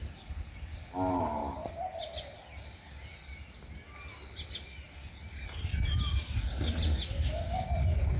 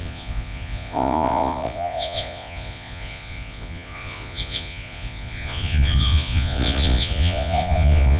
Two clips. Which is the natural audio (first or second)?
first